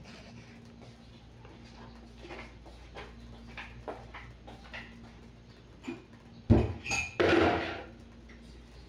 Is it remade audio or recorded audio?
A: recorded